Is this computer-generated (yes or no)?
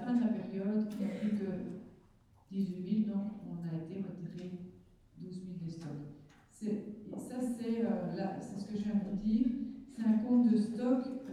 no